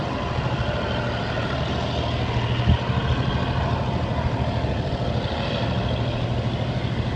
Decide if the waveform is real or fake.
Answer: real